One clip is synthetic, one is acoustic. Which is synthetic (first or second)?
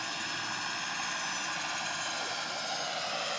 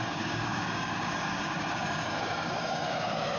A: second